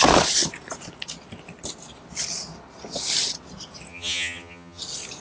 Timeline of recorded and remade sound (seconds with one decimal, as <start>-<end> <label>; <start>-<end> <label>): 0.0-3.9 recorded; 3.9-4.8 remade; 4.8-5.2 recorded